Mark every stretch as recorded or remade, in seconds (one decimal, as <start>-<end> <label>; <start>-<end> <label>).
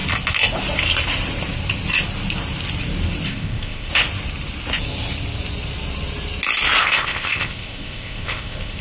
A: 0.0-3.3 recorded; 3.3-3.9 remade; 3.9-6.8 recorded; 6.8-8.8 remade